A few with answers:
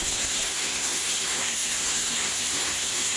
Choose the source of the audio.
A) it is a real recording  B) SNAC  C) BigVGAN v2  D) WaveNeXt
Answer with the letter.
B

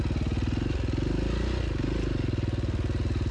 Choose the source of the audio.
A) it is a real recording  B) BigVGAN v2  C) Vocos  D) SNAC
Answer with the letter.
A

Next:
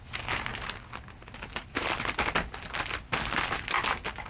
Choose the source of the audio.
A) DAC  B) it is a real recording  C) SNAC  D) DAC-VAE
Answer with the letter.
B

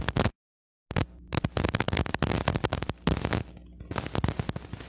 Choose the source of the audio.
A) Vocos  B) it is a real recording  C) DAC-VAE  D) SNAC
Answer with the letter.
B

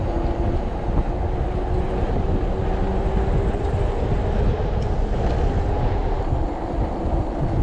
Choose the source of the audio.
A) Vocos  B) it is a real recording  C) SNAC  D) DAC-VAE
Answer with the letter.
B